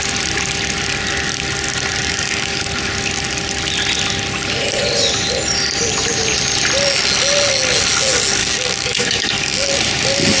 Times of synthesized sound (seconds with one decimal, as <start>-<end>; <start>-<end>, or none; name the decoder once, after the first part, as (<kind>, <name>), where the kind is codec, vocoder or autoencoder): 2.0-2.6 (codec, DAC); 8.4-9.7